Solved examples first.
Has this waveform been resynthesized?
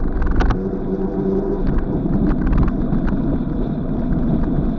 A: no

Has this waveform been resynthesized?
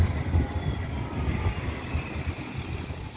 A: no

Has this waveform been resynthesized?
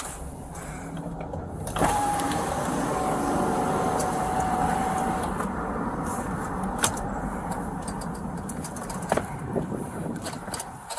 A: yes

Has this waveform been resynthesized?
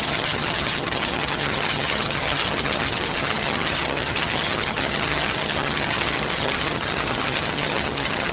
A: yes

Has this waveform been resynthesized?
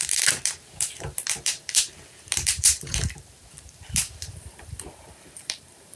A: yes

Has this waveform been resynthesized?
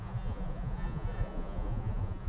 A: yes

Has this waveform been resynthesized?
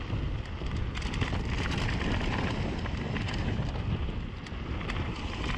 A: no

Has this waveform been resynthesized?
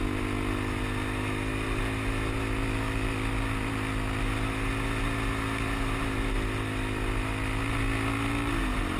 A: no